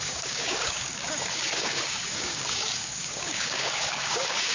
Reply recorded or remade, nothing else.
remade